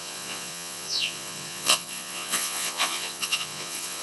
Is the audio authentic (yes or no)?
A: no